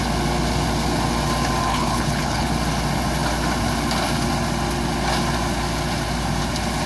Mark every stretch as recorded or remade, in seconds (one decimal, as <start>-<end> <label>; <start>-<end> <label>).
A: 0.0-1.7 recorded; 1.7-2.5 remade; 2.5-6.9 recorded